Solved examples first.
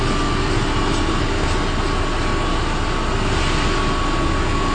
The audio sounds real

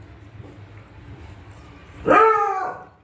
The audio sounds real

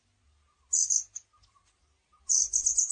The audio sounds real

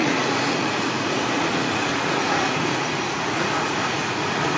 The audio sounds fake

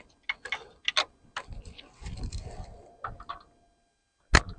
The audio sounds real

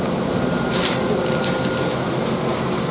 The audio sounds real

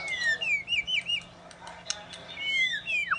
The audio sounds real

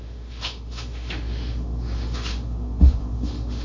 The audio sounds fake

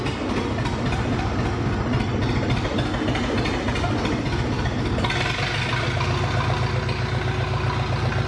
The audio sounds real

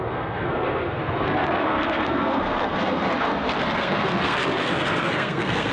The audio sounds fake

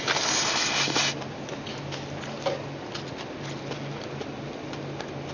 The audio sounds real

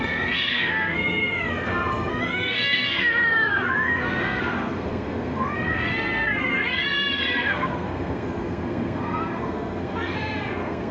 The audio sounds fake